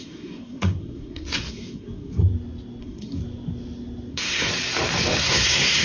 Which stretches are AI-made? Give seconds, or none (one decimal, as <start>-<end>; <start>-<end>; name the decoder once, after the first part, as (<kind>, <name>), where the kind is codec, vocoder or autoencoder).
0.0-2.2 (codec, SNAC); 2.8-3.2; 4.1-4.5; 5.2-5.8